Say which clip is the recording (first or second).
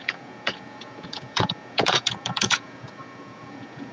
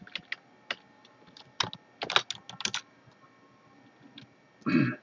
second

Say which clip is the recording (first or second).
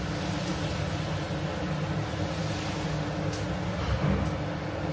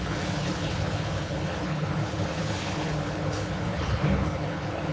first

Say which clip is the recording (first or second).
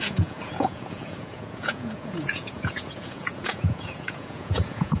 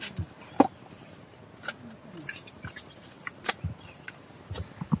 second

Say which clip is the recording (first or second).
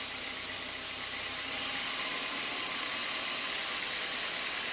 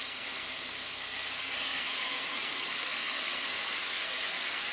first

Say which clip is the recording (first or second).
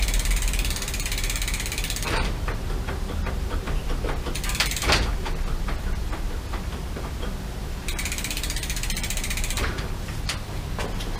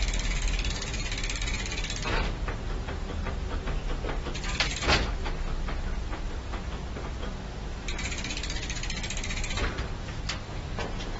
second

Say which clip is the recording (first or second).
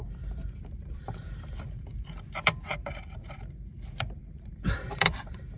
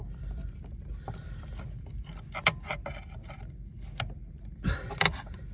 second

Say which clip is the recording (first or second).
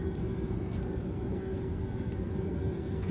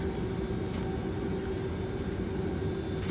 second